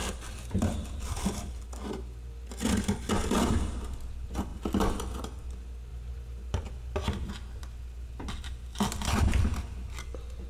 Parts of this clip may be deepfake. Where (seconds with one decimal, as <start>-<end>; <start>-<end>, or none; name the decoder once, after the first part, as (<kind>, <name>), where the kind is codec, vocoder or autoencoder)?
0.0-1.6 (vocoder, BigVGAN v2)